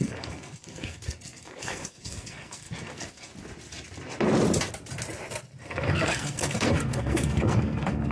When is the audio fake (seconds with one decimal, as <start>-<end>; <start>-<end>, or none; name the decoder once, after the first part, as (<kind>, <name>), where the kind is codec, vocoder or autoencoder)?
0.0-3.3 (codec, SNAC); 5.6-8.1